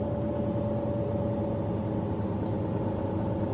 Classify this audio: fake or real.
real